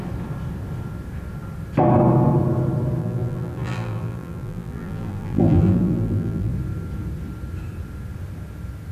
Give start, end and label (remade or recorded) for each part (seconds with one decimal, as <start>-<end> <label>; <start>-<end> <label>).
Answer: 0.0-3.0 recorded; 3.0-6.5 remade; 6.5-8.9 recorded

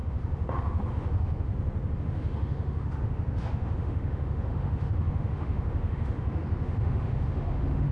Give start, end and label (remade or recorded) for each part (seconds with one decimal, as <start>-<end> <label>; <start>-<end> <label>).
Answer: 0.0-1.5 remade; 1.5-2.0 recorded; 2.0-7.9 remade

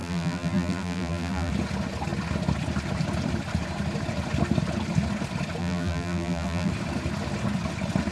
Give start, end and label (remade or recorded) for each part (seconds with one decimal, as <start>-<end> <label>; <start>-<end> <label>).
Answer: 0.0-1.5 remade; 1.5-5.6 recorded; 5.6-6.7 remade; 6.7-8.1 recorded

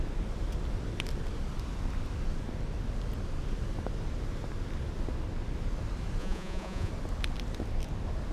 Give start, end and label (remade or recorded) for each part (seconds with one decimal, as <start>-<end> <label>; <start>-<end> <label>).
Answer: 0.0-6.2 recorded; 6.2-6.9 remade; 6.9-8.3 recorded

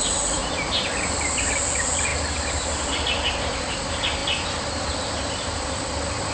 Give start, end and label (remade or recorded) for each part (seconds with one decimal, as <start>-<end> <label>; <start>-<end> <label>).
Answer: 0.0-0.4 remade; 0.4-1.5 recorded; 1.5-2.1 remade; 2.1-3.6 recorded; 3.6-4.2 remade; 4.2-4.9 recorded; 4.9-6.3 remade

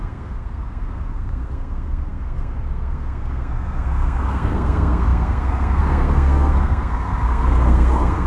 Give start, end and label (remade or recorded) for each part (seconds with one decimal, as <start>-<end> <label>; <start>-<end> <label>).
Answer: 0.0-8.3 remade

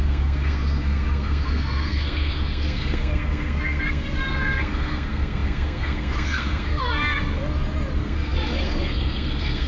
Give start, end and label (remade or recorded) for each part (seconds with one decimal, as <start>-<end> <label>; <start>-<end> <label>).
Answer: 0.0-7.4 remade; 7.4-8.0 recorded; 8.0-9.7 remade